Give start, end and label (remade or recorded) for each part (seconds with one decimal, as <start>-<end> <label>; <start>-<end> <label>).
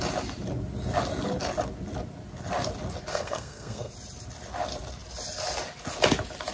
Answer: 0.0-3.1 recorded; 3.1-3.9 remade; 3.9-6.5 recorded